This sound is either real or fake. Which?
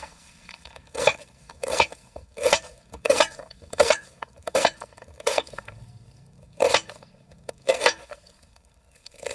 fake